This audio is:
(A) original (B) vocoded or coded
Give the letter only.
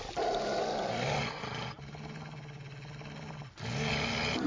A